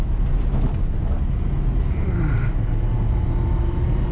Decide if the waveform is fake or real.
real